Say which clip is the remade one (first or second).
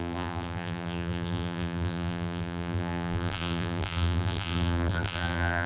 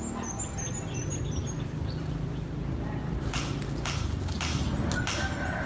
first